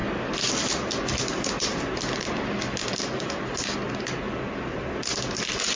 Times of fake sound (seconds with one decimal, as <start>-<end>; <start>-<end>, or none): none